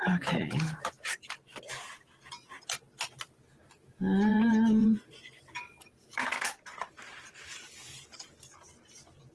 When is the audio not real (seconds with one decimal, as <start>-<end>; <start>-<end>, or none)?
4.3-5.4

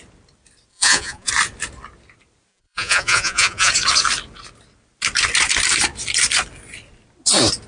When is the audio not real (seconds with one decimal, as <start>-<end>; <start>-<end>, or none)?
0.7-1.3; 2.5-3.7

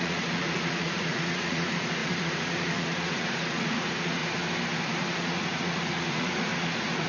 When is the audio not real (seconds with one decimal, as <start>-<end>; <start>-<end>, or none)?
0.0-4.2; 4.8-7.1